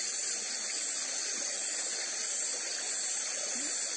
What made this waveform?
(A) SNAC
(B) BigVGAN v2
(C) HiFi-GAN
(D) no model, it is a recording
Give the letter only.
D